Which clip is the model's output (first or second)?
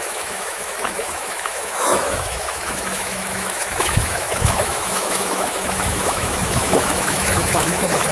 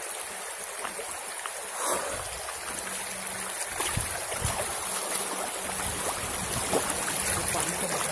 first